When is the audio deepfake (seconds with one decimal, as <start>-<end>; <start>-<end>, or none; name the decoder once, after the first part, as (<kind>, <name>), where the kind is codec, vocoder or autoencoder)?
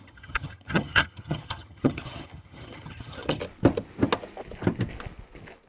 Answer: 0.0-3.4 (vocoder, HiFi-GAN)